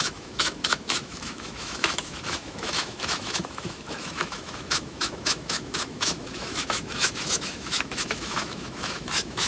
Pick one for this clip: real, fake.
fake